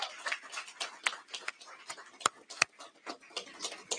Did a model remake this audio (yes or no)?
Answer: no